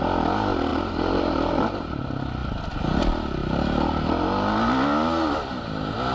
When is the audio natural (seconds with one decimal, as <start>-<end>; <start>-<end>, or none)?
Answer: 0.0-0.7; 2.0-3.4; 3.9-6.1